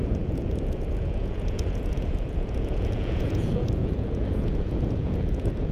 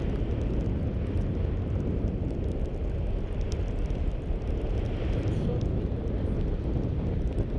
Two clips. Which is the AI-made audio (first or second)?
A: first